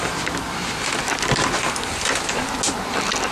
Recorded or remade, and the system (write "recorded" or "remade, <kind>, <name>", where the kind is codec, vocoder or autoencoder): recorded